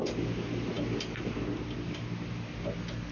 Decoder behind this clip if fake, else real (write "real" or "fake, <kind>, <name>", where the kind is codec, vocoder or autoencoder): real